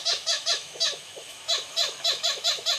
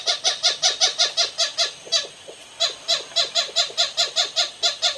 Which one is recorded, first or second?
second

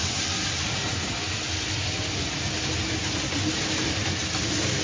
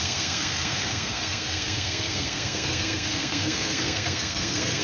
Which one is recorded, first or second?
first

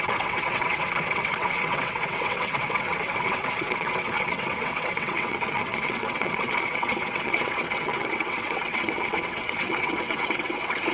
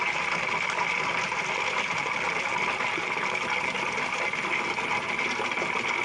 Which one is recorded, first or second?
second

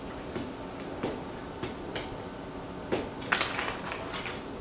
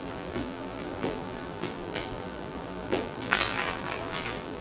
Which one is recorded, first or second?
first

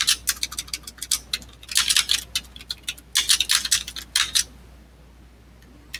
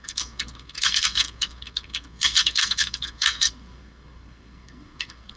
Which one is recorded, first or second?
first